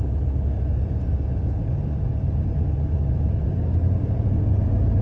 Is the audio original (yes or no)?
yes